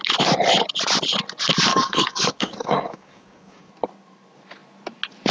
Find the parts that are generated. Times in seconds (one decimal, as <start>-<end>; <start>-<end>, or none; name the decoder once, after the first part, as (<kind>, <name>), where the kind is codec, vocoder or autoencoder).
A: 1.7-3.7 (codec, DAC)